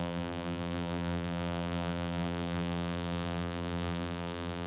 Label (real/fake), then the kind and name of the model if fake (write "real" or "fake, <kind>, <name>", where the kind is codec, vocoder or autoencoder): fake, vocoder, BigVGAN v2